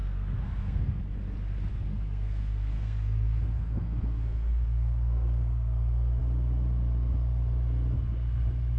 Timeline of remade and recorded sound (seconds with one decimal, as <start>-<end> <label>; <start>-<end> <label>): 0.0-1.0 remade; 1.0-1.7 recorded; 1.7-6.2 remade; 6.2-8.8 recorded